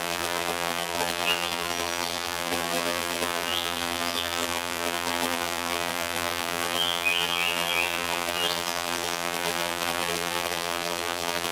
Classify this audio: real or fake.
fake